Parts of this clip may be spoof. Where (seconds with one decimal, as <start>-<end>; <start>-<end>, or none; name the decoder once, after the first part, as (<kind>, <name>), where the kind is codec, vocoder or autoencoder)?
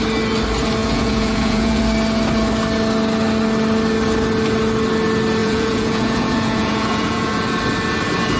0.8-1.8 (vocoder, Vocos); 5.4-7.5